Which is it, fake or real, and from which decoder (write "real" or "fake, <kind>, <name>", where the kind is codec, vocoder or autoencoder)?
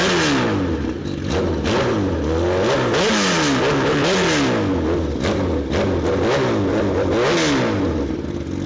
real